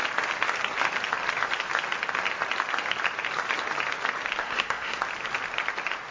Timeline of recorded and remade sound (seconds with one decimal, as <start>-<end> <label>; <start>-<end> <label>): 0.0-4.4 recorded; 4.4-5.0 remade; 5.0-6.1 recorded